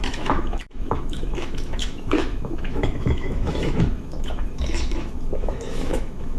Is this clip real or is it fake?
fake